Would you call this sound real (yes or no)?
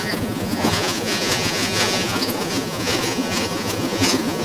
no